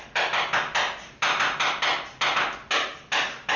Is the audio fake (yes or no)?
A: no